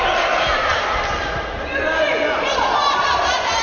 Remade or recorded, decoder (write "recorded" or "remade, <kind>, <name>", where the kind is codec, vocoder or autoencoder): recorded